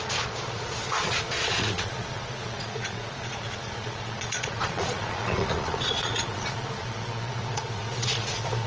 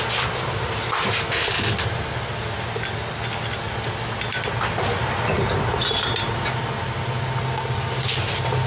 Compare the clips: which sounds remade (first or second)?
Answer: first